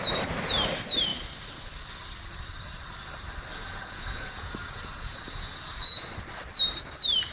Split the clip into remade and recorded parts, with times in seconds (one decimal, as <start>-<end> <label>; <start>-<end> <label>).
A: 0.0-3.5 recorded; 3.5-6.0 remade; 6.0-7.3 recorded